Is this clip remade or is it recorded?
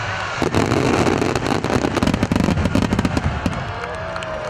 recorded